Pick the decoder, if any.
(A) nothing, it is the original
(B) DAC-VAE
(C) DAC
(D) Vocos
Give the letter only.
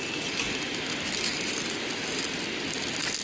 A